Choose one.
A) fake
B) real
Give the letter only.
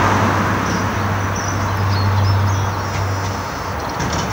B